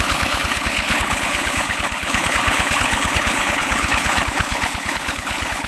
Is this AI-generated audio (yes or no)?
yes